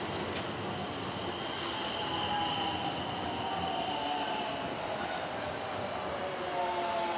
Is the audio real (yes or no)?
yes